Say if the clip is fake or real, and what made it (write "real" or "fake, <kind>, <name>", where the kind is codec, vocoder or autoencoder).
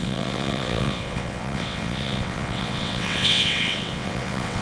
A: fake, vocoder, WaveNeXt